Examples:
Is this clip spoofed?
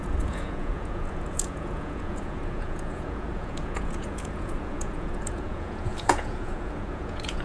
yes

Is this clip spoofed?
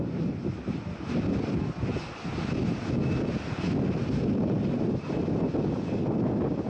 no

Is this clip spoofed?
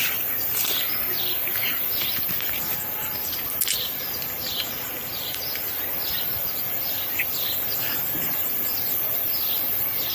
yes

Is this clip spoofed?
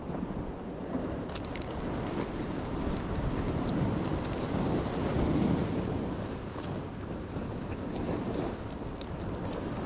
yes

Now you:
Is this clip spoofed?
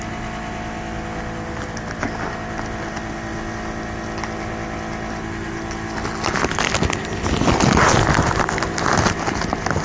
no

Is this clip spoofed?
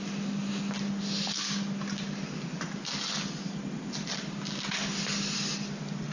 no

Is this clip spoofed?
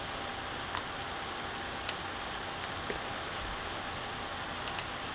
no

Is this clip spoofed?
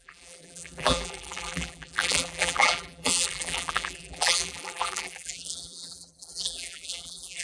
yes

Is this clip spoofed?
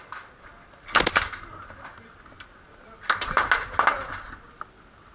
no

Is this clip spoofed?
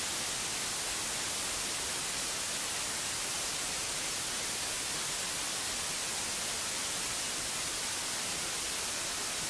no